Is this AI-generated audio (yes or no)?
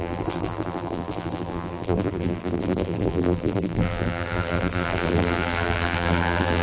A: yes